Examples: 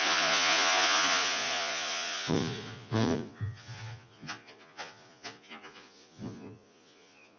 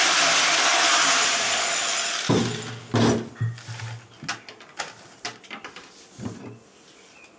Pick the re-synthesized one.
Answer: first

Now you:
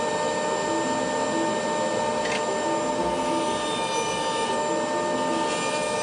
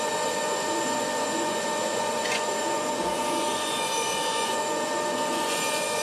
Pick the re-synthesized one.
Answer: second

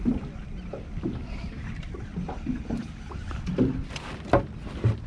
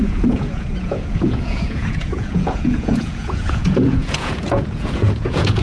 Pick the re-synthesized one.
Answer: second